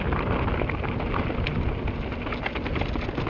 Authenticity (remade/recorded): recorded